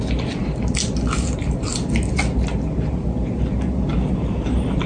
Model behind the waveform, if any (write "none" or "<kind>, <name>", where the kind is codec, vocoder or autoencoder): none